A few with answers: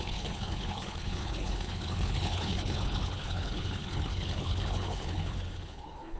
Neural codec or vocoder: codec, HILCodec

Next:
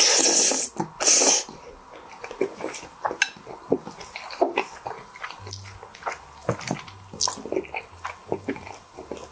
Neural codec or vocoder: none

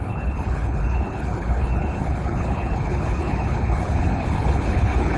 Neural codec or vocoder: codec, HILCodec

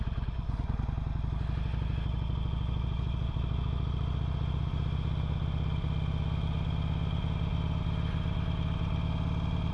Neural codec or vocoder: none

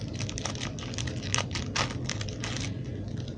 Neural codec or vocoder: none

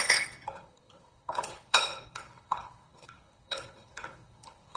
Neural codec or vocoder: codec, HILCodec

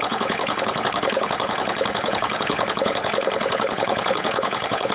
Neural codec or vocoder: codec, HILCodec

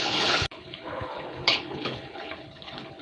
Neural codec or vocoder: codec, HILCodec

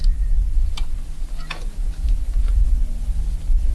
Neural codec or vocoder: none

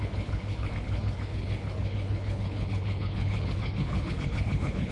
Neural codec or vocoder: codec, HILCodec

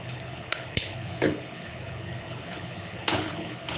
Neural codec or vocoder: codec, HILCodec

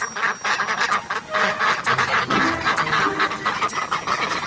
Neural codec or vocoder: none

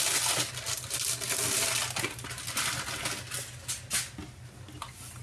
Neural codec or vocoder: none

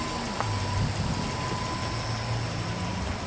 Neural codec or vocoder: none